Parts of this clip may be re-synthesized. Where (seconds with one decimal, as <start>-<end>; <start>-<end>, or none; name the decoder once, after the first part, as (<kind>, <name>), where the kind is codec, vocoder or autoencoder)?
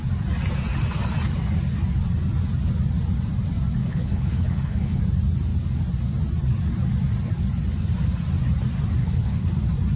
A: 3.8-5.0 (codec, HILCodec); 9.0-9.5